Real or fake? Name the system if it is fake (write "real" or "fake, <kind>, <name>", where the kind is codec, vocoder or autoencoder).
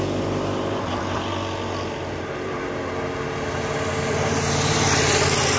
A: real